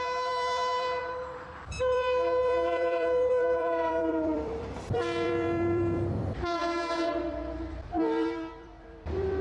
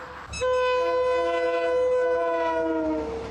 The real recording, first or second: second